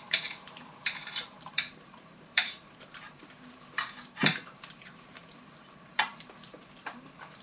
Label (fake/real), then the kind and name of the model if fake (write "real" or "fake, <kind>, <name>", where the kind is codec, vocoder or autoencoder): fake, vocoder, BigVGAN v2